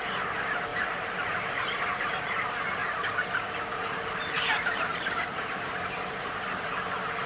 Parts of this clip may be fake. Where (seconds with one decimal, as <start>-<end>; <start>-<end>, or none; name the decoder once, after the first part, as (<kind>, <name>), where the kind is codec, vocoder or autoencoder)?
0.7-1.7 (vocoder, BigVGAN v2); 2.8-7.3